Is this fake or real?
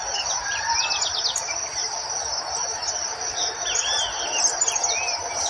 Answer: real